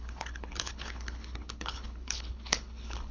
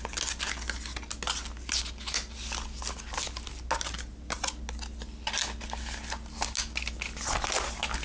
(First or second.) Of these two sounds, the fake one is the first